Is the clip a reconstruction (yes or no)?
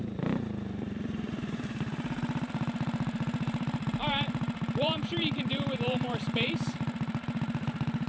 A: yes